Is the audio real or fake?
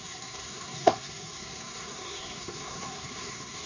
fake